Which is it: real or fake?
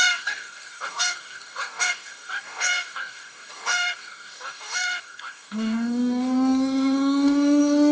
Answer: fake